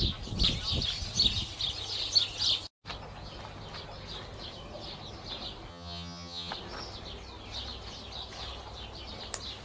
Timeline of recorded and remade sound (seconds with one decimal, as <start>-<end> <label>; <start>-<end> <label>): 0.0-5.7 recorded; 5.7-6.5 remade; 6.5-9.6 recorded